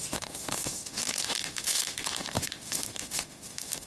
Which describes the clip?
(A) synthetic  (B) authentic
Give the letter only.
A